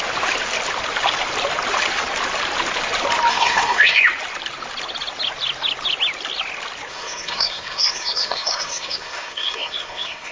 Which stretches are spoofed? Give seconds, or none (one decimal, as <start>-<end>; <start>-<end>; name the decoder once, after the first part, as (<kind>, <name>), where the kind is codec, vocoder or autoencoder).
3.3-4.0 (codec, SNAC); 6.9-10.3